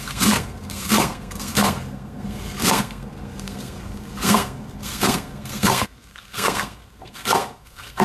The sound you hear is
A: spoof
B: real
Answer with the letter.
A